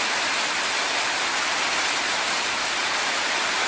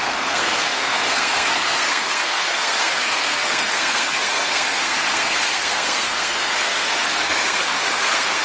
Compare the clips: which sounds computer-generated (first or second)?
second